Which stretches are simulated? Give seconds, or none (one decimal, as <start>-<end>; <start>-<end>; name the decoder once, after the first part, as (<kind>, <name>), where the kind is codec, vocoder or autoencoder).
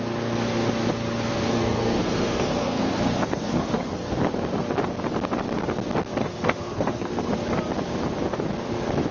1.5-4.3 (codec, SNAC); 6.2-7.3